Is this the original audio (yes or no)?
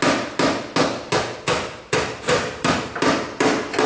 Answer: yes